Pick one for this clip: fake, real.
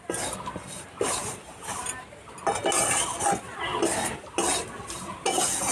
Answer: real